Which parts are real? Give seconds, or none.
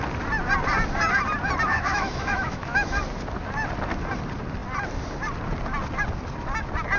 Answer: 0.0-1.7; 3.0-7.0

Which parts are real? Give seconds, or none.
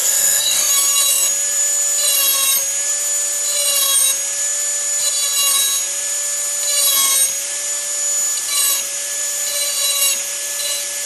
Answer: 0.7-11.1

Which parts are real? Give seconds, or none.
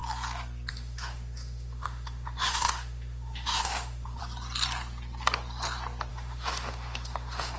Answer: 0.0-0.7; 4.2-6.1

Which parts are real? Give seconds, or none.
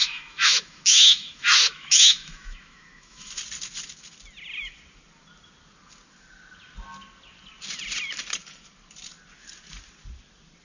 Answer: 3.3-10.6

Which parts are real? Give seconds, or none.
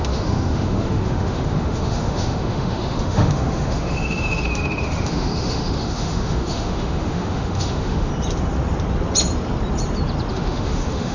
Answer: 8.1-10.3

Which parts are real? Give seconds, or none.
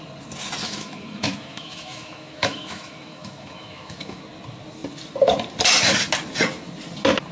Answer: 0.0-0.6; 4.2-7.3